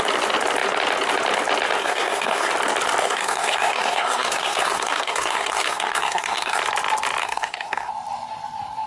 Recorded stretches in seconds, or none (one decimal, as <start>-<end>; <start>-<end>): 0.0-1.8; 2.5-3.0; 6.6-7.2; 7.9-8.9